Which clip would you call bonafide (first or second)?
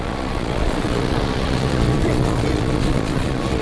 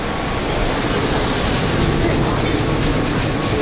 second